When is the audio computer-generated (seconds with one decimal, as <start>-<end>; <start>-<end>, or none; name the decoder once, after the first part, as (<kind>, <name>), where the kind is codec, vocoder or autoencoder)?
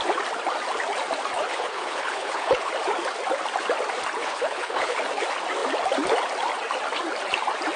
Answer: 1.5-2.7 (codec, HILCodec); 4.2-5.0